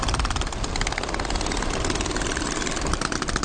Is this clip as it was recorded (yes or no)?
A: yes